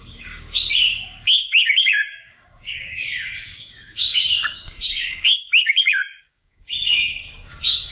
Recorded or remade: remade